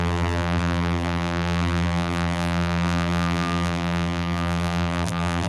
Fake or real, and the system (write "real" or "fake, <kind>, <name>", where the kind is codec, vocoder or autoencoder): fake, vocoder, BigVGAN v2